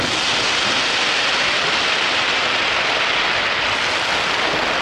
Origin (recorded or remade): recorded